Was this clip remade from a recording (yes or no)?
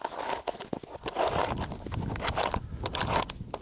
no